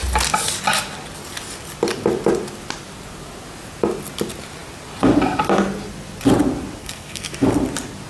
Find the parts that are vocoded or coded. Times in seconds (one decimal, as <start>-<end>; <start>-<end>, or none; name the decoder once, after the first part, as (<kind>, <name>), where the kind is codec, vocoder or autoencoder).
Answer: 6.8-7.3 (codec, SNAC)